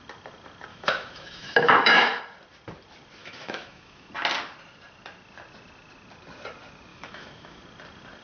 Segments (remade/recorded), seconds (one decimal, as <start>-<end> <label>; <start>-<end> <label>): 0.0-0.7 recorded; 0.7-2.2 remade; 2.2-3.2 recorded; 3.2-4.1 remade; 4.1-6.9 recorded; 6.9-7.6 remade; 7.6-8.2 recorded